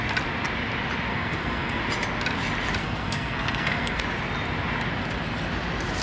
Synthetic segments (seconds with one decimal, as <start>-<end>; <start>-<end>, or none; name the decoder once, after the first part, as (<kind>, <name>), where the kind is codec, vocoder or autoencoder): 1.1-1.8 (codec, SNAC); 2.8-4.0